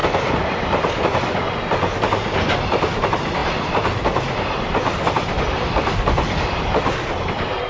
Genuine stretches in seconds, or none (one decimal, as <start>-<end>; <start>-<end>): 0.0-3.4; 6.6-7.7